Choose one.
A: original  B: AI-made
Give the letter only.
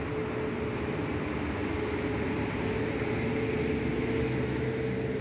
A